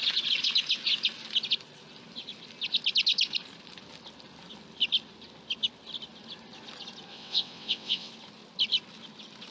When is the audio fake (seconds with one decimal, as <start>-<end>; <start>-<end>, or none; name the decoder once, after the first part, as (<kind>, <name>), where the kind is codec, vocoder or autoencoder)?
7.1-8.1 (vocoder, WaveNeXt)